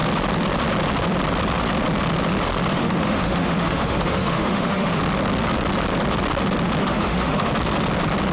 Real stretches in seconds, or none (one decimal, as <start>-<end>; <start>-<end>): 0.0-2.7; 5.0-6.8; 7.5-8.3